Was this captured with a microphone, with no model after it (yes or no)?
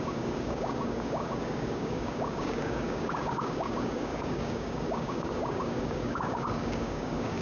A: no